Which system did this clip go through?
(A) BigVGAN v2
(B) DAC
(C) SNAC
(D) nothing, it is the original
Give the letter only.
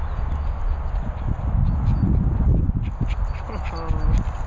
D